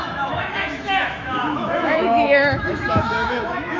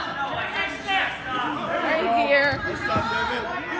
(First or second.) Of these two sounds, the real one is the second